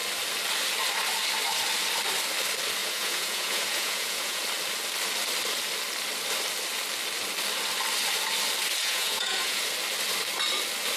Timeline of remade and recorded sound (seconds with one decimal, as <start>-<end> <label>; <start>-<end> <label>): 0.0-2.8 recorded; 2.8-4.4 remade; 4.4-8.8 recorded; 8.8-9.6 remade; 9.6-11.0 recorded